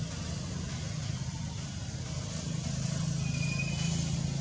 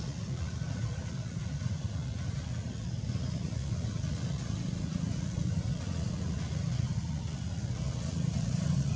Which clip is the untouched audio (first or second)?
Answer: first